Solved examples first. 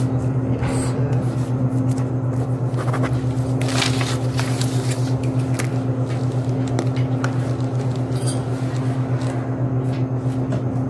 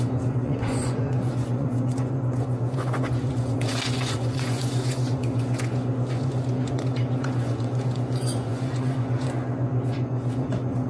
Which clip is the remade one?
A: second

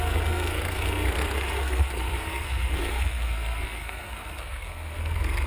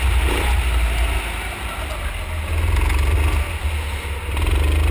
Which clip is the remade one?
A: first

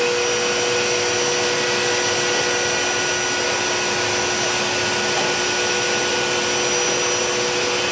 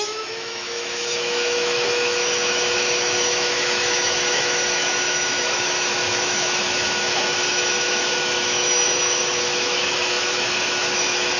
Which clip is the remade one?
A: second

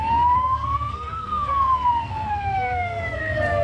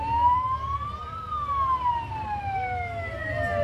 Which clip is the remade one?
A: first